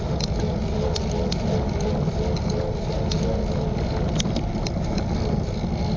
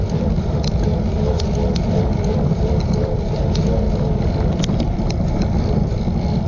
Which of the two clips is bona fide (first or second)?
first